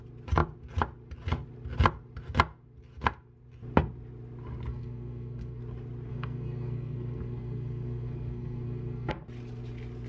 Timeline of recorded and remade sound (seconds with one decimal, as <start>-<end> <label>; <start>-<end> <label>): 0.0-4.7 recorded; 4.7-5.6 remade; 5.6-6.1 recorded; 6.1-9.1 remade; 9.1-10.1 recorded